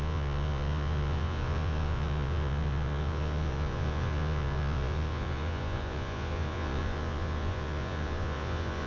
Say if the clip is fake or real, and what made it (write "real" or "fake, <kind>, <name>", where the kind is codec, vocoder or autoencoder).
fake, vocoder, Vocos